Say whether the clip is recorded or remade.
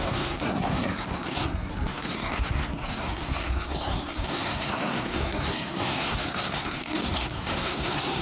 remade